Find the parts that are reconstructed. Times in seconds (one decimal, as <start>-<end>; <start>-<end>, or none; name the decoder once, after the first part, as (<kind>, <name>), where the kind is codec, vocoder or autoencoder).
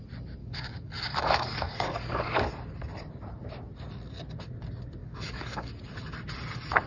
0.4-2.5 (codec, DAC); 5.0-5.7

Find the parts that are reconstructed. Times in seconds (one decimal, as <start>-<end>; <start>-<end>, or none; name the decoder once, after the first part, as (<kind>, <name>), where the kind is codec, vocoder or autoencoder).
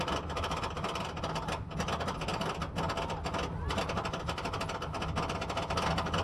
none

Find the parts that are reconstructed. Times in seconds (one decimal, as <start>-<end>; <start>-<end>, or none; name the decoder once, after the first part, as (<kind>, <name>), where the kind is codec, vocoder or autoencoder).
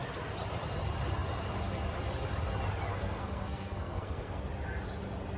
2.9-4.4 (codec, SNAC)